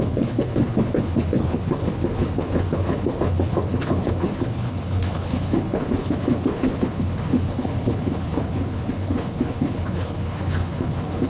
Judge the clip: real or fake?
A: fake